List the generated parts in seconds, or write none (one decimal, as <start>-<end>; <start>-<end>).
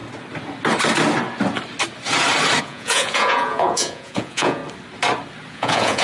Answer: 2.6-4.6; 5.5-6.0